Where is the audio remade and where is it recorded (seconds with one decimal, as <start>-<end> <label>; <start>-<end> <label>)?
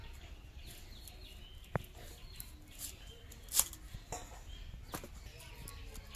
0.0-6.2 recorded